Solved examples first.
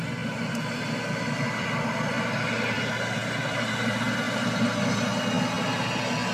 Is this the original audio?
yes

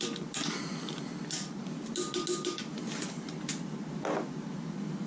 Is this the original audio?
yes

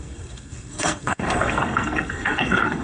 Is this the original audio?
no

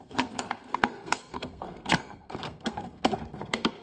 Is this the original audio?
no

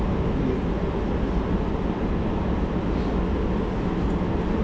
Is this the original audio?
yes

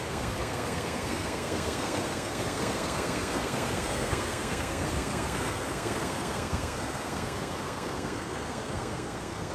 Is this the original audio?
no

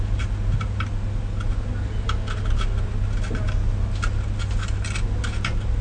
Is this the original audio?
yes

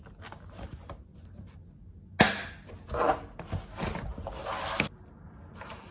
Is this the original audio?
yes